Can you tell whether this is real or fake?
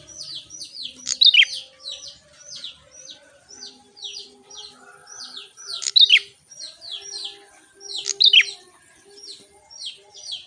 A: real